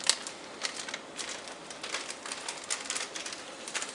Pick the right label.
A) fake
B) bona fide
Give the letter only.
B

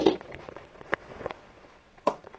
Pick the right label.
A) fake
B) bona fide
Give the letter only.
A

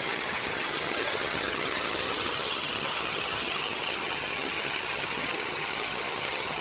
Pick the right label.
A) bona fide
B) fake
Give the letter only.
B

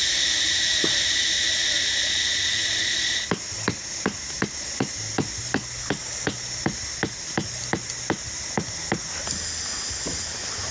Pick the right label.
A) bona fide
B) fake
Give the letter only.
A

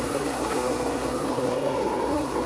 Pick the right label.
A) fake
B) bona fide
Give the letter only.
A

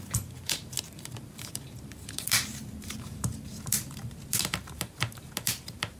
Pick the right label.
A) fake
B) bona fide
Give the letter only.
A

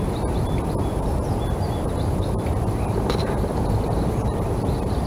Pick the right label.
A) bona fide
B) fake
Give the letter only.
B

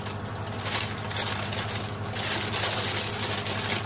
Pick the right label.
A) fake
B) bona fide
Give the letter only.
B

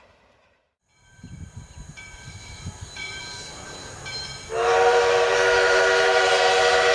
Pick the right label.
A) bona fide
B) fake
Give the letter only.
B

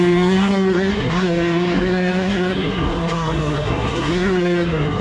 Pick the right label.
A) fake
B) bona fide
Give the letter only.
A